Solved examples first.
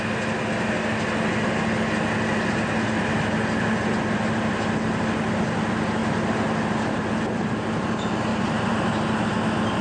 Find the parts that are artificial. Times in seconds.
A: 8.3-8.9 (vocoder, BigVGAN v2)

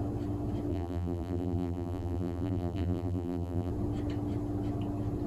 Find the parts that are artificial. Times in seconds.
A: 0.7-3.7 (vocoder, BigVGAN v2)

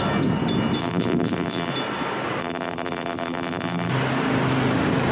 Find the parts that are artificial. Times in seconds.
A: 0.8-1.7 (vocoder, BigVGAN v2); 2.4-3.9

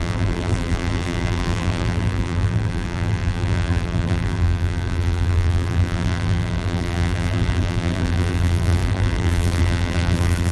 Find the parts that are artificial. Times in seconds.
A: 0.0-10.5 (vocoder, BigVGAN v2)

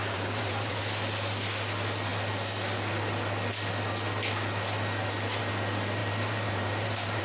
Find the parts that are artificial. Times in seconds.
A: 0.0-0.8 (vocoder, BigVGAN v2); 6.0-7.2

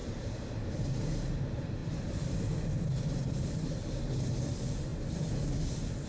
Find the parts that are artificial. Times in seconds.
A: 0.0-0.7 (vocoder, BigVGAN v2)